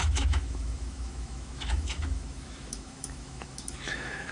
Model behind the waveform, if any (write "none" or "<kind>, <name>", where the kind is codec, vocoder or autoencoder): autoencoder, DAC-VAE